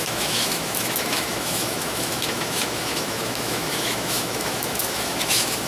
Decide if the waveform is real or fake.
fake